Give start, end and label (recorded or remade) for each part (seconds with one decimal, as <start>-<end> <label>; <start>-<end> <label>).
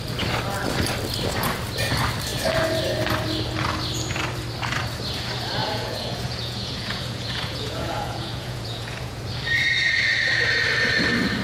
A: 0.0-5.6 recorded; 5.6-9.2 remade; 9.2-11.4 recorded